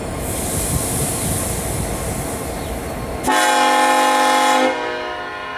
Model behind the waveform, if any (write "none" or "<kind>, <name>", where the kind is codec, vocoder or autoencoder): none